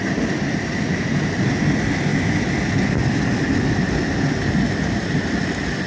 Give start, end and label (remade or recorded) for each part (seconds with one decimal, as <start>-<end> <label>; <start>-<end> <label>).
0.0-5.9 recorded